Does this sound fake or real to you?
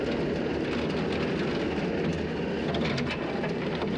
real